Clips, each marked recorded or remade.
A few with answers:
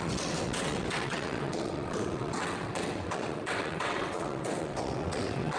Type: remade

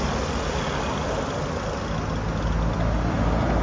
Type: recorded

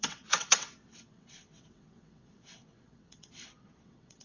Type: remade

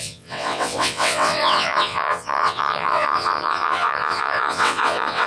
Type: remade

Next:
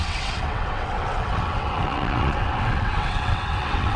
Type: remade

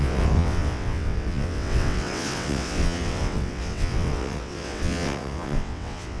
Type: remade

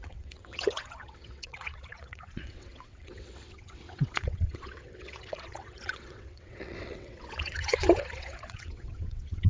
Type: remade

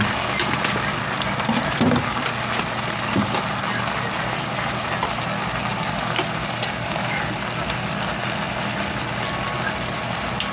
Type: recorded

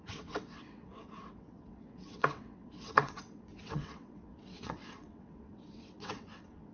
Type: remade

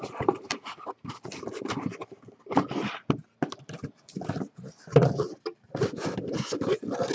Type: recorded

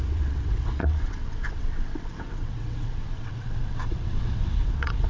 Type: remade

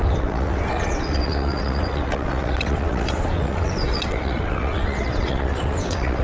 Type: remade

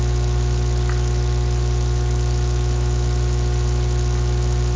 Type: recorded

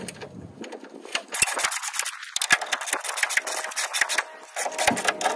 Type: recorded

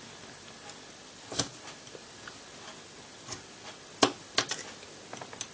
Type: recorded